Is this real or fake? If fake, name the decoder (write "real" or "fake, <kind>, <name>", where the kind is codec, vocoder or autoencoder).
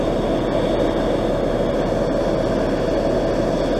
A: real